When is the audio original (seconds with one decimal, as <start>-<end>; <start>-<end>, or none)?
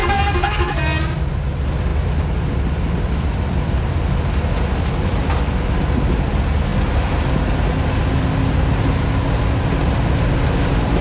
1.0-11.0